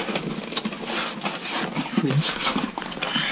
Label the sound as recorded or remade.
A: recorded